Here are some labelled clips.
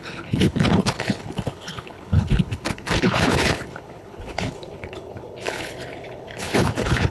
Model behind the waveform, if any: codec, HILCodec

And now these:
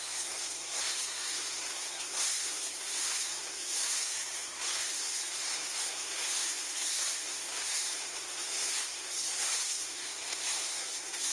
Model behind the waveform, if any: codec, SNAC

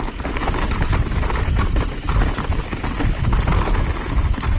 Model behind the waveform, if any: none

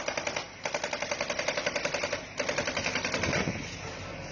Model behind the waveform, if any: none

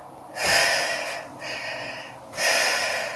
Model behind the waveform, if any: none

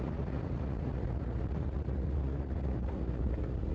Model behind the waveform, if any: vocoder, Vocos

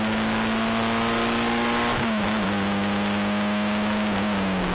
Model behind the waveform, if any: none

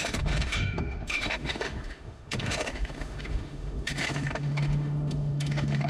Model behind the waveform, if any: autoencoder, DAC-VAE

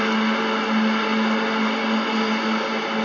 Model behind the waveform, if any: none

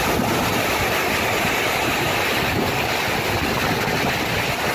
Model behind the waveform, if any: none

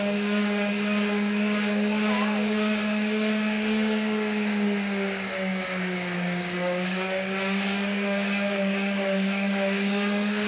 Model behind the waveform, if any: codec, DAC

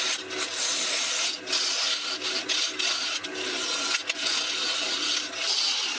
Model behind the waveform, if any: none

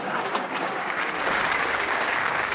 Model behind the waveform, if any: codec, DAC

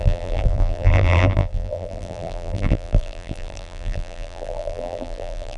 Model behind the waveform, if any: vocoder, BigVGAN v2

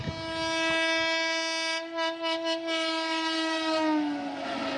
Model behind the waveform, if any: none